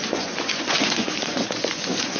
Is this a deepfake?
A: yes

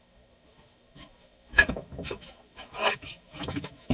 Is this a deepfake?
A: yes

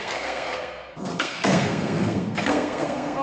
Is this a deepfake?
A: yes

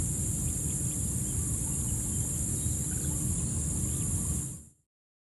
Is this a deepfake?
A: no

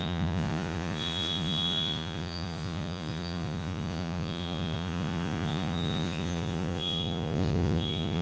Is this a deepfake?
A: yes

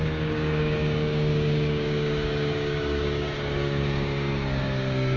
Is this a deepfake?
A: yes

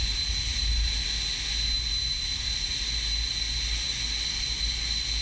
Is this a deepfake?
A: no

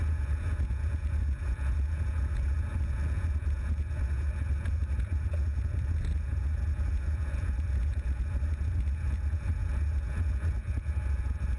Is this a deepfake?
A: yes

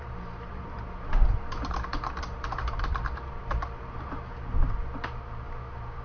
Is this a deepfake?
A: yes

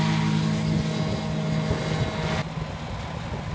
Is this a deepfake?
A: no